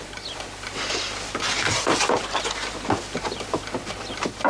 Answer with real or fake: real